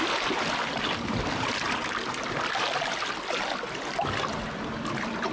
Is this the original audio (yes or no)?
yes